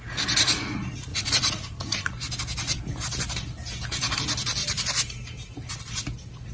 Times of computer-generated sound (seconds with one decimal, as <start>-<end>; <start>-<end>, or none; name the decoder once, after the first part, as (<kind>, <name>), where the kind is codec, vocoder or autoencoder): 1.1-2.1 (vocoder, Vocos)